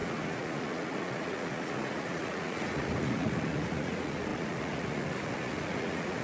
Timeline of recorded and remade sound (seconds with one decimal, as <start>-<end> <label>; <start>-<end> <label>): 0.0-6.2 remade